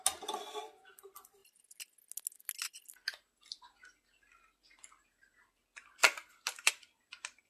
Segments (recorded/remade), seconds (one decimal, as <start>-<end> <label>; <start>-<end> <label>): 0.0-7.5 recorded